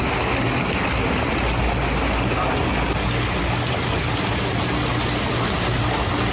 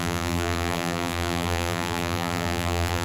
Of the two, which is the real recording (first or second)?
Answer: first